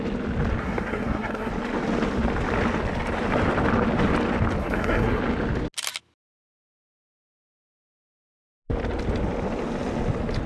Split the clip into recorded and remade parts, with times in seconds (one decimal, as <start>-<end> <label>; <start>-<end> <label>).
0.0-0.6 recorded; 0.6-1.5 remade; 1.5-4.6 recorded; 4.6-5.2 remade; 5.2-10.5 recorded

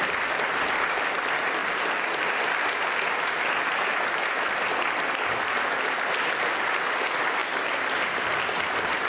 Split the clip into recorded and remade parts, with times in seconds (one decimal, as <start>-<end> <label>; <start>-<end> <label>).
0.0-9.1 recorded